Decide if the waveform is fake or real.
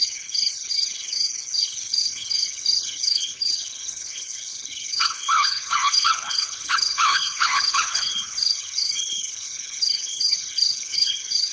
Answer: fake